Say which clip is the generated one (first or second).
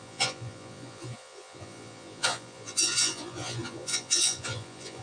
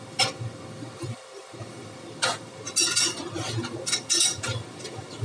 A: first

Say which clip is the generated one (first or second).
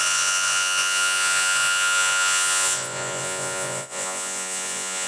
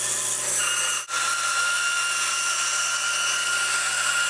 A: first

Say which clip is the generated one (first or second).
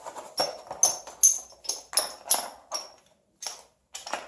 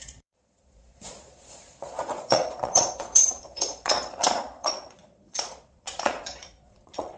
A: second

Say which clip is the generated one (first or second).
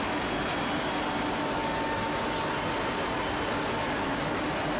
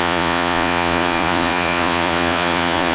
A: second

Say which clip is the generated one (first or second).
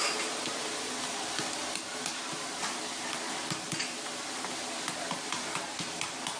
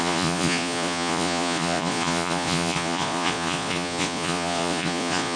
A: second